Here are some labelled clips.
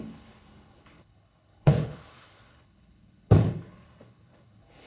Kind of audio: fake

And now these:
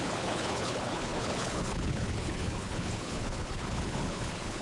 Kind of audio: fake